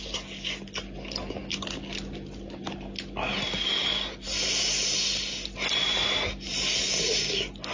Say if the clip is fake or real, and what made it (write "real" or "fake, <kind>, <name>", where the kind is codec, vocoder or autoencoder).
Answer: real